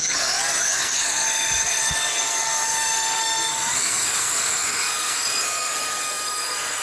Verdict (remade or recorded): remade